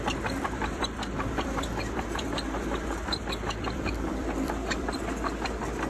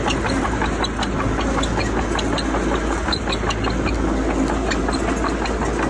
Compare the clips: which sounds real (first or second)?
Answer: second